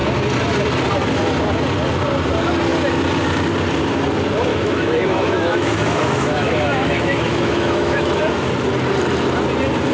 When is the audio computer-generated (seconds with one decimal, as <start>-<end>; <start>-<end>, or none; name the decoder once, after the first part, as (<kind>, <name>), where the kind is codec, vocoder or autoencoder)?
4.5-8.2 (autoencoder, DAC-VAE)